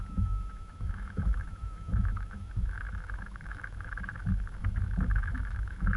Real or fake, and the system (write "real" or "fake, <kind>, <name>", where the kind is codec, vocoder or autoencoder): fake, autoencoder, DAC-VAE